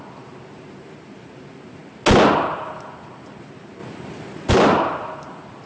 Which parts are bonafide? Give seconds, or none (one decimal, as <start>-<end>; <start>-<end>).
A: 1.8-2.3